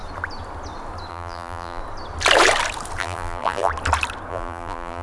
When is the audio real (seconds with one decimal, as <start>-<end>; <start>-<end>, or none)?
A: 0.0-1.1; 1.8-3.0; 3.7-4.3